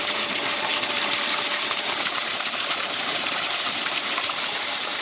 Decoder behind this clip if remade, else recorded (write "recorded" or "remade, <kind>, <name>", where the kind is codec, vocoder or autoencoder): remade, vocoder, BigVGAN v2